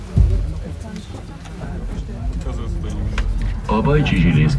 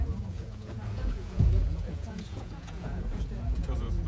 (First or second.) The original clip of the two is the first